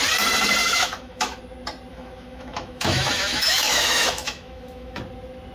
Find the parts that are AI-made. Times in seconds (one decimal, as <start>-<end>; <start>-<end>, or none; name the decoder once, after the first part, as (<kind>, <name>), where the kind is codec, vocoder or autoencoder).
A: 0.6-1.4 (autoencoder, DAC-VAE); 1.9-5.0